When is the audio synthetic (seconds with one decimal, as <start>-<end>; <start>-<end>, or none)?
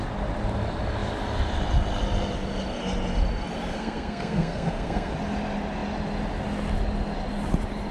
3.7-5.1